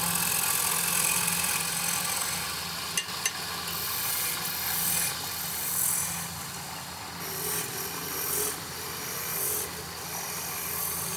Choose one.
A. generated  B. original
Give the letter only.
B